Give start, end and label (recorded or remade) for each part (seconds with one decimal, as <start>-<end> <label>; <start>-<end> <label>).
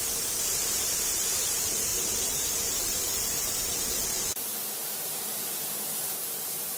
0.0-6.8 remade